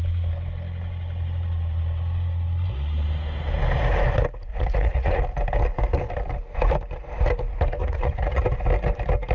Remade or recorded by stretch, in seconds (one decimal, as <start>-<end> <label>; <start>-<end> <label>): 0.0-4.5 recorded; 4.5-5.2 remade; 5.2-7.8 recorded; 7.8-8.4 remade; 8.4-9.3 recorded